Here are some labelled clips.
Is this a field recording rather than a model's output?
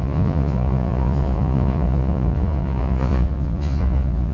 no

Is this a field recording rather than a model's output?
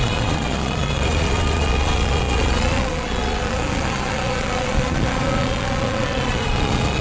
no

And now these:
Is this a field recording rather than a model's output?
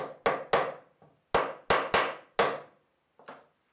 yes